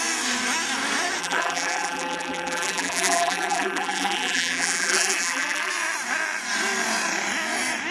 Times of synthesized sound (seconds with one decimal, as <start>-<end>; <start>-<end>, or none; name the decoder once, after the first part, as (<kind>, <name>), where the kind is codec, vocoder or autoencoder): 1.2-5.7 (vocoder, BigVGAN v2)